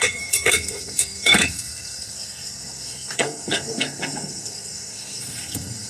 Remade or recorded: remade